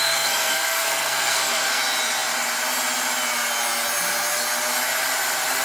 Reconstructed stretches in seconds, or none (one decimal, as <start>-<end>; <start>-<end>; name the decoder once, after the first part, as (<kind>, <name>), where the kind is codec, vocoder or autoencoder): 0.0-1.8 (codec, SNAC)